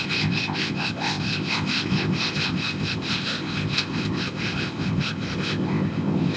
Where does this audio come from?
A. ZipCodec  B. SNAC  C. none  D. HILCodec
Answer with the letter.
A